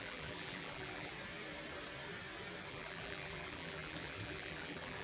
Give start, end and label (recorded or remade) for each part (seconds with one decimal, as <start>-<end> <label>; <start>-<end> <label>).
0.0-1.1 remade; 1.1-2.7 recorded; 2.7-5.0 remade